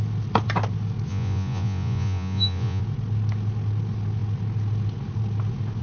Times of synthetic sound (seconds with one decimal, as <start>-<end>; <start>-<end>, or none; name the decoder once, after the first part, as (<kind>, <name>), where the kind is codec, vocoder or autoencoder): 1.1-2.8 (vocoder, Vocos)